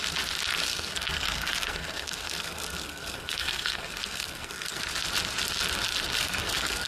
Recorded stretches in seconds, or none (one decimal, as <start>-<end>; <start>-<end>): 0.0-0.7; 4.8-6.2